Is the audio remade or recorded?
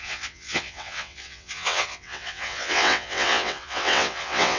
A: remade